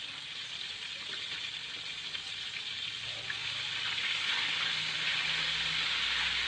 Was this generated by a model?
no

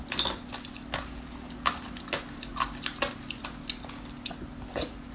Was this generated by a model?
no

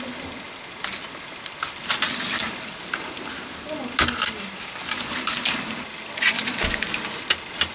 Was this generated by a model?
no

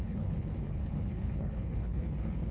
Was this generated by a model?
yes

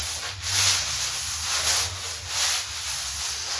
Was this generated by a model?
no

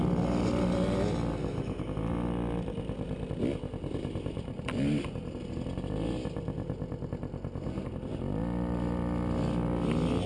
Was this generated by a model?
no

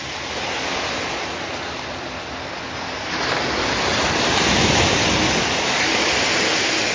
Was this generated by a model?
no